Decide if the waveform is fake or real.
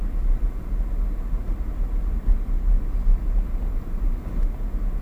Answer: real